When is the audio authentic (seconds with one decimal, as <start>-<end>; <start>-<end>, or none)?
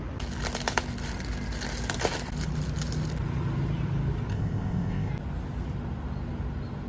0.0-4.3; 5.1-6.9